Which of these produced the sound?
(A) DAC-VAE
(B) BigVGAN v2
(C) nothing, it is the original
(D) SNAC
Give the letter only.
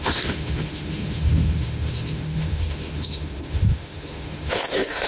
A